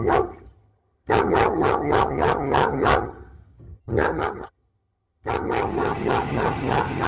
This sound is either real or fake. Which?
fake